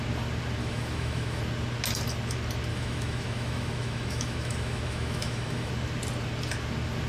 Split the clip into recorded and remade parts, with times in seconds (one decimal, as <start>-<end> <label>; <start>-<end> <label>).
0.0-0.6 recorded; 0.6-1.4 remade; 1.4-2.7 recorded; 2.7-5.7 remade; 5.7-7.1 recorded